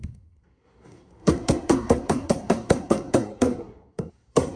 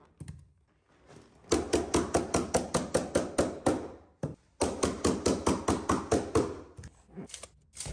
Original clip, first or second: second